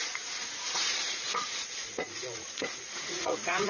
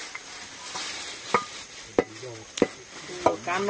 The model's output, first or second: first